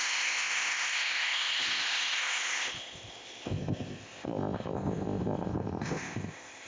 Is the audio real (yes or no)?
no